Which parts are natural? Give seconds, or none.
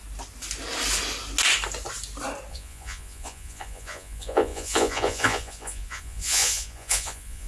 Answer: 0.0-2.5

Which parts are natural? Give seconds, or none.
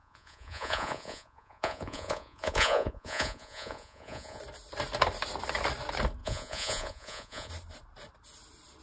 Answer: 4.4-6.2; 7.5-8.8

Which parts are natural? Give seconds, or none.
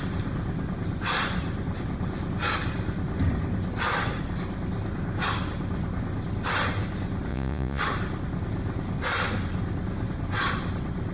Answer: 0.0-7.3; 7.8-11.1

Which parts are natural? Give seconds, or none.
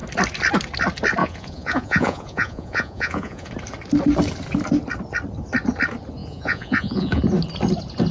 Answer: 0.0-1.2; 3.5-6.2; 7.2-8.1